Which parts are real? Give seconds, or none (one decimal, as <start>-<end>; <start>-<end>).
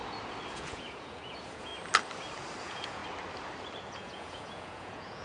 0.0-0.5; 1.7-2.6; 3.0-3.8